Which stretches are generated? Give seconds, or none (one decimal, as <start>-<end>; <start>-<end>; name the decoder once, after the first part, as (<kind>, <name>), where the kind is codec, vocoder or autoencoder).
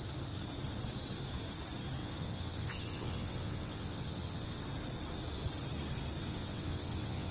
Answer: 2.0-4.6 (vocoder, WaveNeXt); 6.2-7.3